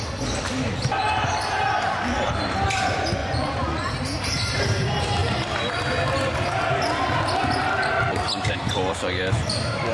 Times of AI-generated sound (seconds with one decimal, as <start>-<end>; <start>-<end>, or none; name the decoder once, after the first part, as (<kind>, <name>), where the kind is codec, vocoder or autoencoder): 3.2-3.8 (vocoder, Vocos); 8.5-9.4